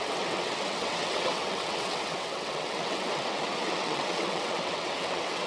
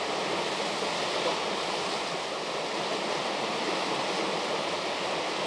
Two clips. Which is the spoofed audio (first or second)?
first